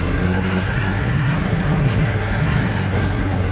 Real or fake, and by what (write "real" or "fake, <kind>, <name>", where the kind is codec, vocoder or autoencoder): fake, codec, SNAC